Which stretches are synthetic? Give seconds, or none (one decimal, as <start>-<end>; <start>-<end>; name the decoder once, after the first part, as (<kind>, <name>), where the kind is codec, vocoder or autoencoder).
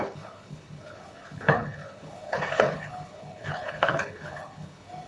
0.0-5.1 (codec, HILCodec)